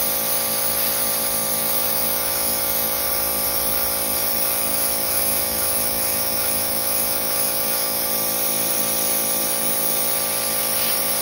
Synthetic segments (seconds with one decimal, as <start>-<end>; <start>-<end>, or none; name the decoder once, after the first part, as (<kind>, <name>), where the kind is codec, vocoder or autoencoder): 1.6-3.0 (autoencoder, DAC-VAE); 4.7-8.0